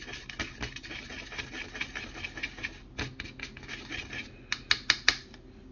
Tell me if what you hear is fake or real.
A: real